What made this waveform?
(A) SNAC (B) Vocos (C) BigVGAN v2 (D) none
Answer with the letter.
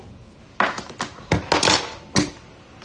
D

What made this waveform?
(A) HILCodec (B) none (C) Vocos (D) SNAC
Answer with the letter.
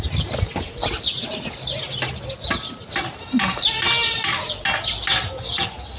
B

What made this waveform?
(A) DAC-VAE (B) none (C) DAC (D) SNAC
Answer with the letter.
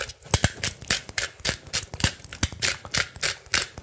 B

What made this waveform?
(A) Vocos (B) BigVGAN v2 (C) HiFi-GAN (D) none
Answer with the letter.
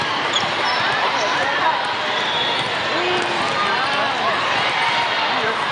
D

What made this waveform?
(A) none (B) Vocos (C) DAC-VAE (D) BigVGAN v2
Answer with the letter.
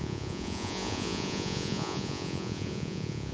B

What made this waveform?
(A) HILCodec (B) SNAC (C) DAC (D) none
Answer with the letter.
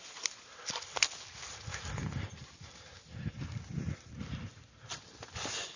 D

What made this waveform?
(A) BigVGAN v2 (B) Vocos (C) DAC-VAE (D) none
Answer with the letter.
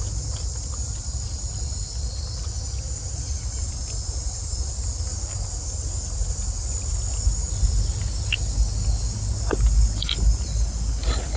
D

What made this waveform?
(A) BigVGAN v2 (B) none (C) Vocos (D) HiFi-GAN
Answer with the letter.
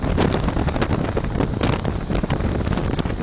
B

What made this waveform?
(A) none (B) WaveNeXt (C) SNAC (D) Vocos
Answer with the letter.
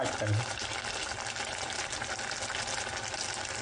A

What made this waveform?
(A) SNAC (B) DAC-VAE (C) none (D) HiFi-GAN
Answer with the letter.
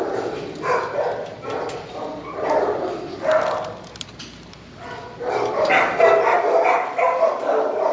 C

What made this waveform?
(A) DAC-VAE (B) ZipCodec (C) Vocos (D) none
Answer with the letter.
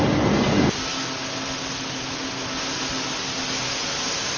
D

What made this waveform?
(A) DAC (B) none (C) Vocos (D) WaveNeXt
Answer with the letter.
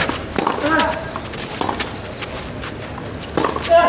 B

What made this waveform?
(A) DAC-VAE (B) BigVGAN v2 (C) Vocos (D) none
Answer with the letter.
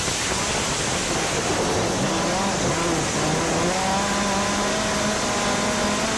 D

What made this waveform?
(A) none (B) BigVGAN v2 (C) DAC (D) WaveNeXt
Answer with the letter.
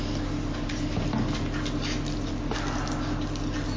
A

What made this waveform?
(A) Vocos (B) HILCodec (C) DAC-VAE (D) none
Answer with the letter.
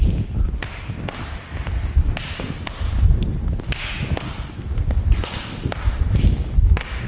D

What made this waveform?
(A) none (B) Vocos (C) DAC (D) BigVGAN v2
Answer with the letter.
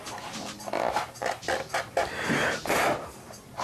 A